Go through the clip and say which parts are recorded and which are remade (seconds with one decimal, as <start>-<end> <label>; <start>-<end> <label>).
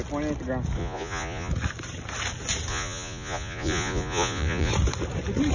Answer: 0.0-0.8 recorded; 0.8-1.5 remade; 1.5-2.7 recorded; 2.7-4.7 remade; 4.7-5.5 recorded